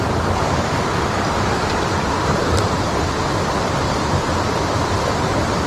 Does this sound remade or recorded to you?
recorded